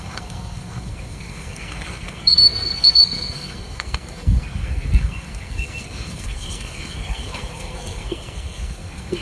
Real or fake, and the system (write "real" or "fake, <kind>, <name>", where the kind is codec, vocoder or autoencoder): fake, codec, SNAC